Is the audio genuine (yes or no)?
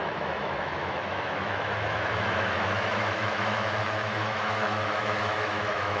no